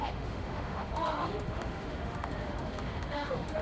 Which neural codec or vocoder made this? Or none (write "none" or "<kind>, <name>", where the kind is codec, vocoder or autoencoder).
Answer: autoencoder, DAC-VAE